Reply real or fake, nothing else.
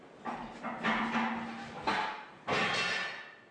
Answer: real